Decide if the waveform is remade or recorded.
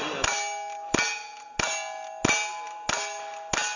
recorded